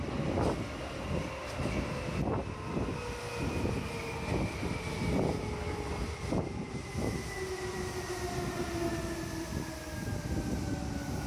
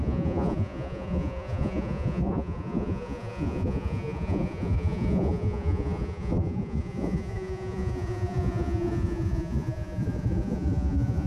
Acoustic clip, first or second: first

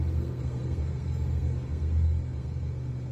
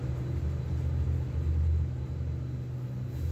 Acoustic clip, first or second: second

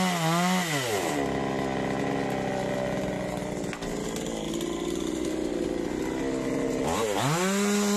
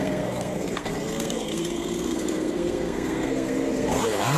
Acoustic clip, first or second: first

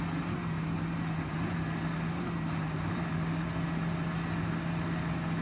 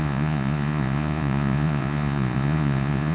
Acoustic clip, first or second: first